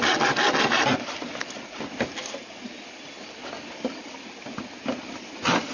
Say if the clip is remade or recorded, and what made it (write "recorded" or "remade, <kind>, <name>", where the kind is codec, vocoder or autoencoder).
recorded